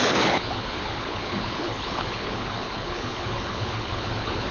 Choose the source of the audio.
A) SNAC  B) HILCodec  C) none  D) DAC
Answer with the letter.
B